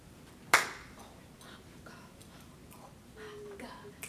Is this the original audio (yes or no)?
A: yes